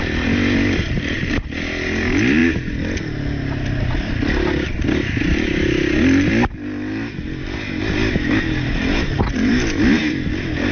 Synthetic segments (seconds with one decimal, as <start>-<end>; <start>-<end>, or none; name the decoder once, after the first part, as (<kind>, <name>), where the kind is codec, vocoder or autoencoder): none